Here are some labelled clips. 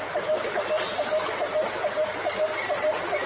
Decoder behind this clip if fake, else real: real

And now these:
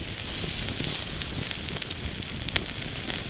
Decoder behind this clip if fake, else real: real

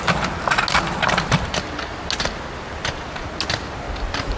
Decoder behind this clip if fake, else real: real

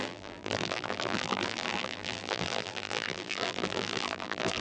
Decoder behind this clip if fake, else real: fake, vocoder, BigVGAN v2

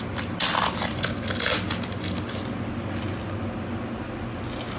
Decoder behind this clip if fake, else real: real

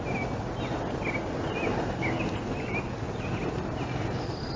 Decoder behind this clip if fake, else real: real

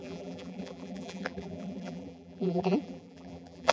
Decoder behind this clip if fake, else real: fake, vocoder, BigVGAN v2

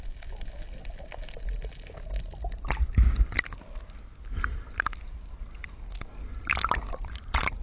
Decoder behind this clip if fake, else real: real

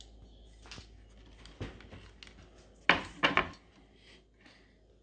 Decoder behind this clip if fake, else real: real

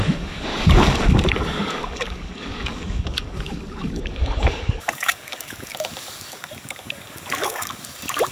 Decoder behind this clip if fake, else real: fake, codec, DAC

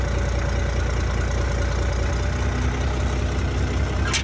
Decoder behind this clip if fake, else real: real